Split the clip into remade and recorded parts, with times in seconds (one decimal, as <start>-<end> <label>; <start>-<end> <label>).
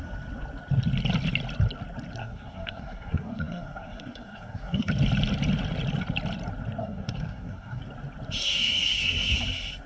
0.0-2.2 recorded; 2.2-4.9 remade; 4.9-6.8 recorded; 6.8-7.8 remade; 7.8-8.4 recorded; 8.4-9.4 remade; 9.4-9.9 recorded